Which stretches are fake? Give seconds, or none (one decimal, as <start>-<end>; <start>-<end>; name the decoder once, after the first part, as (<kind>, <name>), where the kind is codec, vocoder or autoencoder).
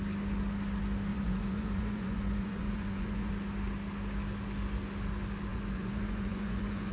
1.1-3.3 (vocoder, Vocos); 5.5-6.9